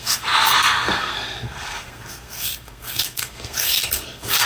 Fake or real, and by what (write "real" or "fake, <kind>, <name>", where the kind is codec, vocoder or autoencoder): fake, codec, SNAC